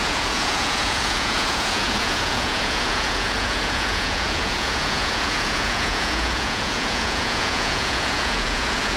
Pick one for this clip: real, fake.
fake